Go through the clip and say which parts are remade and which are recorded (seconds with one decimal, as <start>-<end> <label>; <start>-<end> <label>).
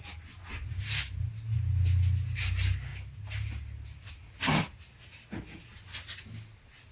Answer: 0.0-6.9 recorded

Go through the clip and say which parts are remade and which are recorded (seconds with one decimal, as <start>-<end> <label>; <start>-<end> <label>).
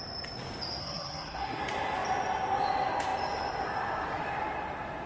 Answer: 0.0-0.8 recorded; 0.8-1.6 remade; 1.6-5.1 recorded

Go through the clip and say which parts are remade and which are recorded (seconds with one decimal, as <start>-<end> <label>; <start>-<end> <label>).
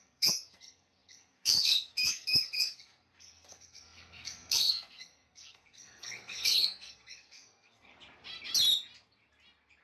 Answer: 0.0-7.9 remade; 7.9-9.8 recorded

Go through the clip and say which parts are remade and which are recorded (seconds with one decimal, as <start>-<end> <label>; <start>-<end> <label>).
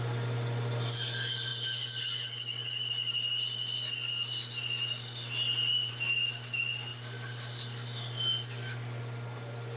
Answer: 0.0-9.8 recorded